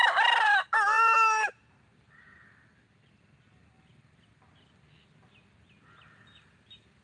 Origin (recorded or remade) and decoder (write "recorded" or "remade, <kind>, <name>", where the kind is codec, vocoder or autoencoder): recorded